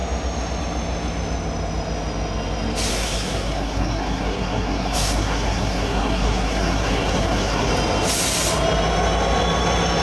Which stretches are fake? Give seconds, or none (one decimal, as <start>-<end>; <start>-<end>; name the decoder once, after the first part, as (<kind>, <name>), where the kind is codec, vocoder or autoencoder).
2.9-7.7 (codec, SNAC)